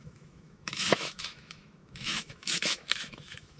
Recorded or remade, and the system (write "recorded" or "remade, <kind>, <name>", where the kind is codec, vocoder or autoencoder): remade, autoencoder, DAC-VAE